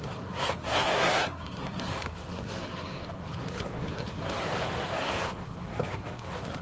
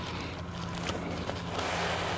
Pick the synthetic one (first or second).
first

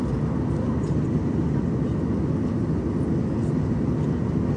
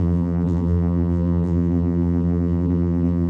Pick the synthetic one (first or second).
second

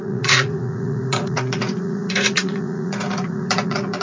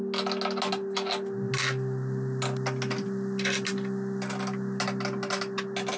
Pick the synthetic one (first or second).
first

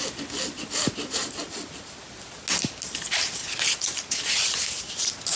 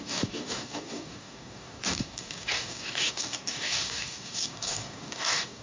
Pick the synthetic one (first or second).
second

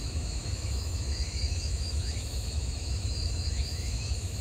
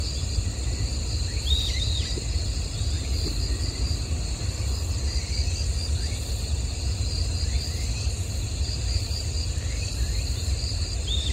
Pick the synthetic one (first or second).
first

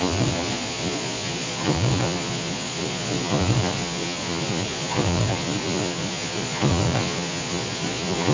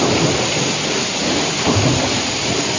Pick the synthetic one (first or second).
first